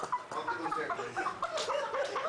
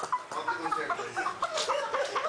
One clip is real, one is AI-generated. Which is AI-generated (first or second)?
first